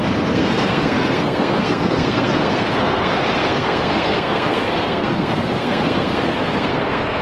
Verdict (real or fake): fake